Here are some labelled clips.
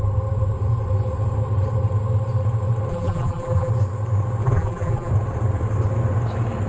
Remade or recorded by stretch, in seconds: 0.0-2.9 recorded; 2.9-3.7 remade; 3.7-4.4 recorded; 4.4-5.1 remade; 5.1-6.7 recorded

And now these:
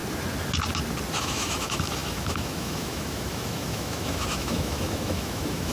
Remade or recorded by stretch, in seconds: 0.0-1.2 recorded; 1.2-5.7 remade

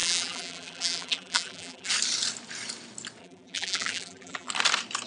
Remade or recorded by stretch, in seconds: 0.0-1.9 remade; 1.9-3.2 recorded; 3.2-4.5 remade; 4.5-5.1 recorded

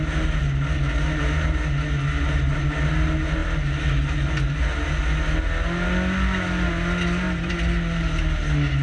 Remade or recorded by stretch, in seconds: 0.0-8.8 recorded

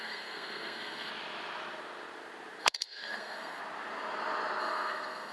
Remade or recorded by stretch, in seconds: 0.0-1.1 remade; 1.1-2.6 recorded; 2.6-3.6 remade; 3.6-4.6 recorded; 4.6-5.3 remade

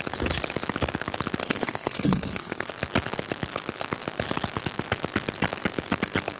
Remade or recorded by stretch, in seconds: 0.0-1.4 recorded; 1.4-2.7 remade; 2.7-6.4 recorded

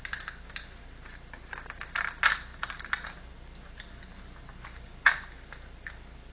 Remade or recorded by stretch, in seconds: 0.0-6.3 recorded